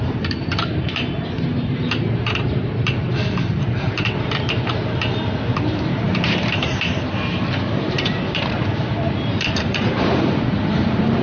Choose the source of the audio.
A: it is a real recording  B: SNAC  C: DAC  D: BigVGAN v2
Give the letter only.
D